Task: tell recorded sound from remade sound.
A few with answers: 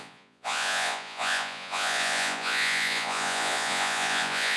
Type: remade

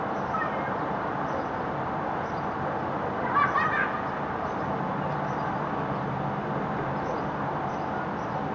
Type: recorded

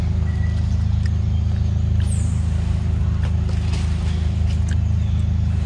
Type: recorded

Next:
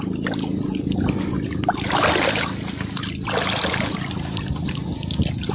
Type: recorded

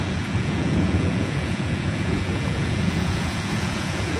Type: remade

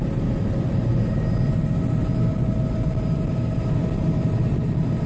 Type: recorded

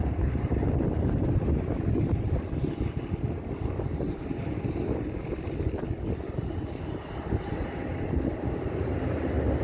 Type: recorded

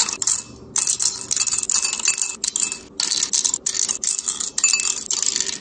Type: recorded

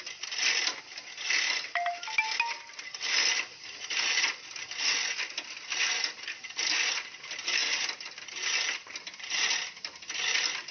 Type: recorded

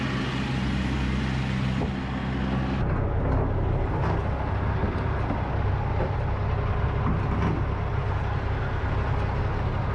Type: recorded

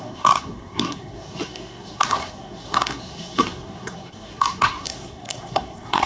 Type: remade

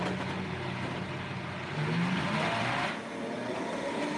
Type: recorded